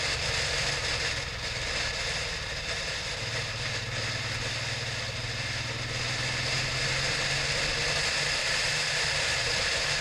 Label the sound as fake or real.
real